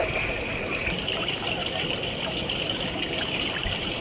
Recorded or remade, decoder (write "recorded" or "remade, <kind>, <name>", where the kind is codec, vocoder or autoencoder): recorded